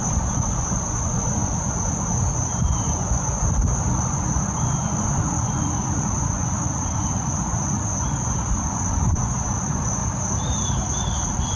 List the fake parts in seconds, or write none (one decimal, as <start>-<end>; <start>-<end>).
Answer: 0.0-10.0